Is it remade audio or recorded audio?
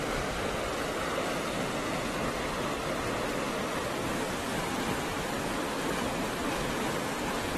recorded